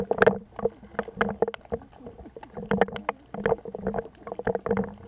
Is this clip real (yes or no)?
yes